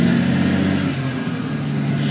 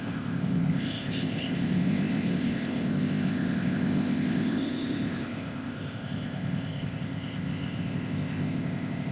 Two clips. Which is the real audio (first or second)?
first